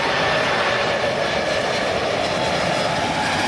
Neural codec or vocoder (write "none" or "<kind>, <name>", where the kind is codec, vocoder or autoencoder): none